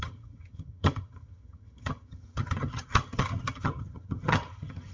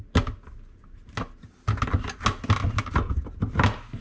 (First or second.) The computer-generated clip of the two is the first